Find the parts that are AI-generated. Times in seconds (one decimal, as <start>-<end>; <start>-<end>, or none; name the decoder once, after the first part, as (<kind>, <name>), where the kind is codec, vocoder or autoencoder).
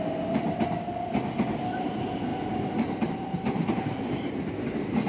none